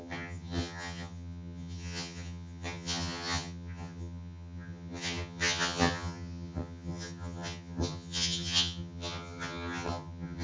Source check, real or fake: fake